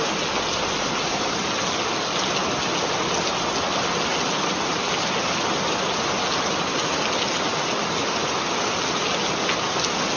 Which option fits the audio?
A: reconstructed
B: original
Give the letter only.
B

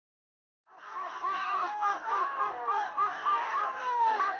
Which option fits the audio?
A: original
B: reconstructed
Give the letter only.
B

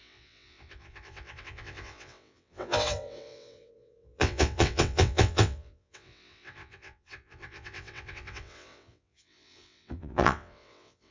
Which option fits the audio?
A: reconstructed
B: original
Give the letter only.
A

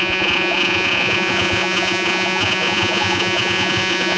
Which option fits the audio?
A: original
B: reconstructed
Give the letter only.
B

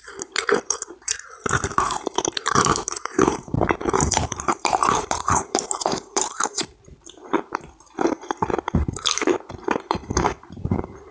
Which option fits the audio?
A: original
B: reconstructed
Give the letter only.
B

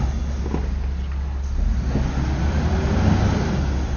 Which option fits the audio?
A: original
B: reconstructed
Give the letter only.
A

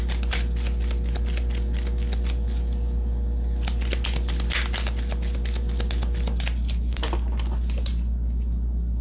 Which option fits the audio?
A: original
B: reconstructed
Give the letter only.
A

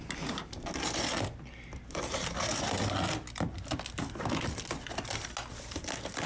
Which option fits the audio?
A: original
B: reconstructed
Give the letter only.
A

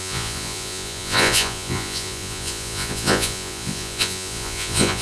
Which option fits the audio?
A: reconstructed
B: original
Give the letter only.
A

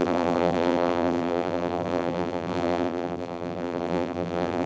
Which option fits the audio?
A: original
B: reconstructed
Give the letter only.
B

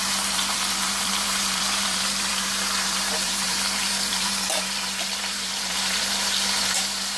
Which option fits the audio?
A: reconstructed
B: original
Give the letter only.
A